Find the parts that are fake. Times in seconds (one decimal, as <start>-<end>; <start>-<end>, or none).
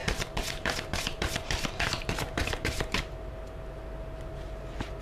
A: 0.0-3.0